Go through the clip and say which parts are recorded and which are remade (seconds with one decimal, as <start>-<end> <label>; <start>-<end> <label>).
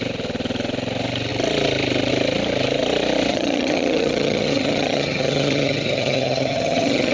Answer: 0.0-3.3 recorded; 3.3-7.1 remade